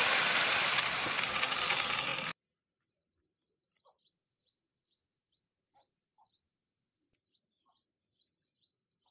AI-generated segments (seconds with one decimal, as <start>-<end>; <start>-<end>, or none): 0.0-9.1